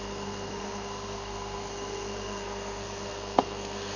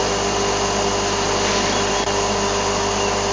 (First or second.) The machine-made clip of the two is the first